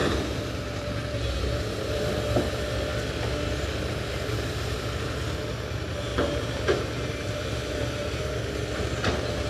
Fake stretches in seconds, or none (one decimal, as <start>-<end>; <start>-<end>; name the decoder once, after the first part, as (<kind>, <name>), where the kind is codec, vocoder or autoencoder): 0.0-2.0 (vocoder, BigVGAN v2); 6.1-8.2